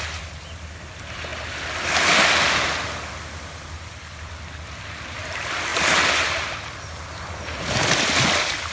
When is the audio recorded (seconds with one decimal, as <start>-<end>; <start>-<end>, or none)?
1.3-4.7; 5.7-7.6